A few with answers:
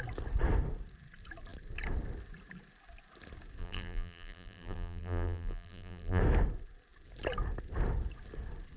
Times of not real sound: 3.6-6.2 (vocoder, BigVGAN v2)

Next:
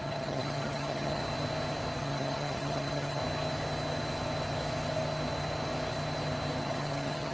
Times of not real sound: 0.0-1.2 (vocoder, HiFi-GAN); 2.0-3.2; 6.6-7.3

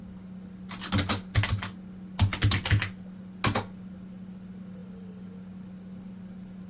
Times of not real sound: none

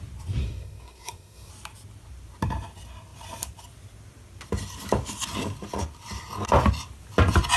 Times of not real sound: 0.4-1.5 (codec, SNAC)